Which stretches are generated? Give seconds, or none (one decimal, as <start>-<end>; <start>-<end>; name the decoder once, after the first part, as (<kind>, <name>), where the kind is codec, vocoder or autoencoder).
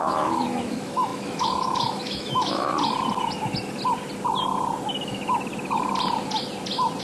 0.0-2.7 (autoencoder, DAC-VAE)